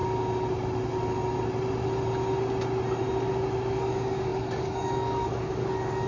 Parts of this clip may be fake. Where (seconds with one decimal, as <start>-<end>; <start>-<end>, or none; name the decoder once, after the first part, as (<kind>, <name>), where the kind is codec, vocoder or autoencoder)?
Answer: 3.7-6.1 (codec, DAC)